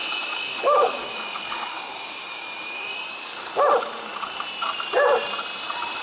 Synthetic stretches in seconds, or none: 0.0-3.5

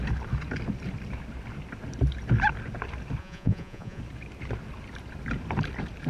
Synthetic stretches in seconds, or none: 3.2-4.0

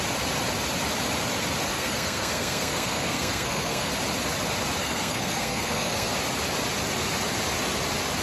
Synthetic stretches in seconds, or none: 1.7-3.9; 4.8-6.1

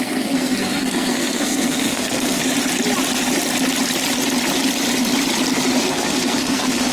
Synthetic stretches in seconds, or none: 0.0-2.4; 5.8-6.9

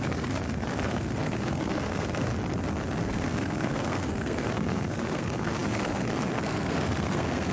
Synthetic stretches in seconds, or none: 0.0-2.3; 3.0-7.5

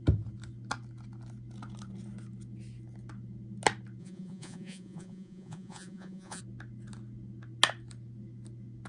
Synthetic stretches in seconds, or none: 4.0-6.4

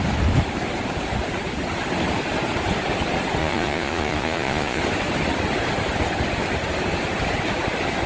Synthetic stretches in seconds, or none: 3.4-4.8

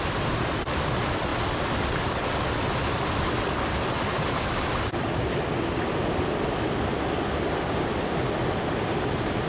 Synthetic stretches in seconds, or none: 0.0-5.1; 8.9-9.5